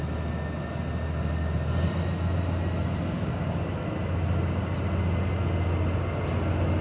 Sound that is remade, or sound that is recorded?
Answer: recorded